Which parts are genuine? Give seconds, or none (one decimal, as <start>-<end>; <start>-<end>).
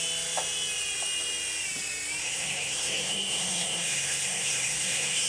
0.0-2.2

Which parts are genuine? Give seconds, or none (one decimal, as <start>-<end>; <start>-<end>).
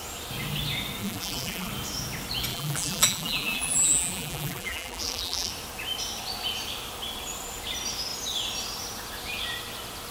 0.0-1.0; 1.7-2.5; 5.5-10.1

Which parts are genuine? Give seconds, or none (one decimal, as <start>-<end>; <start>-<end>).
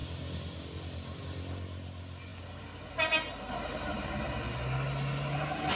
0.0-5.8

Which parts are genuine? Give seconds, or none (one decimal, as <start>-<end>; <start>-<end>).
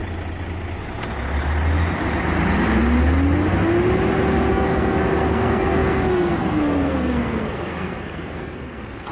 0.0-4.5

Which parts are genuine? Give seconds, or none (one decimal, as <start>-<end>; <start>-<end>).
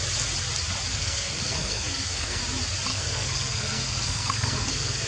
0.0-0.9; 2.4-2.9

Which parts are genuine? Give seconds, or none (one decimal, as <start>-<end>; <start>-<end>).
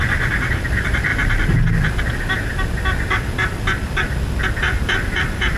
1.1-4.5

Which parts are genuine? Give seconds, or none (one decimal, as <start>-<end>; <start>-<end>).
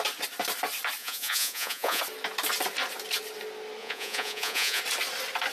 0.0-1.0; 2.0-3.8; 4.8-5.5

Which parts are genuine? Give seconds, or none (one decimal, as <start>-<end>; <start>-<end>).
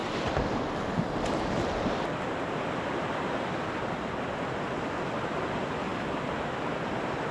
0.0-7.3